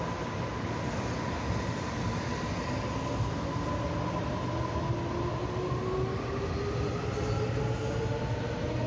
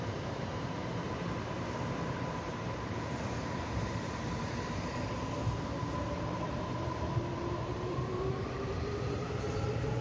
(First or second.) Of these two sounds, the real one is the first